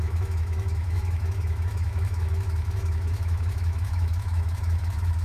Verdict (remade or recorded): remade